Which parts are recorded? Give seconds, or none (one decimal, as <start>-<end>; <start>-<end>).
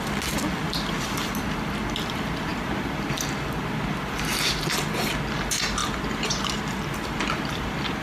0.0-2.5; 3.3-5.8; 7.2-8.0